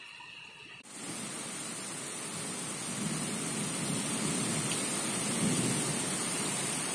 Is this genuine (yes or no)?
yes